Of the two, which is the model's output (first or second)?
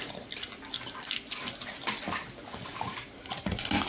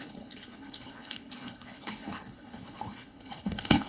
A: second